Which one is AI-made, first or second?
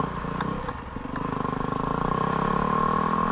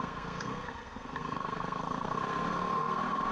second